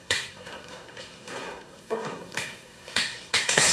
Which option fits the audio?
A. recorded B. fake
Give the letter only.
B